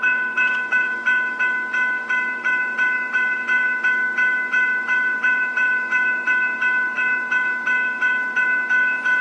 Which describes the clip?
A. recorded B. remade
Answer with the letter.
B